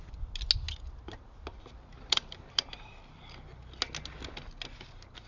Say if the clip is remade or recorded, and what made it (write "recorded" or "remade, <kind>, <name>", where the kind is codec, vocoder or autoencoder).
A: recorded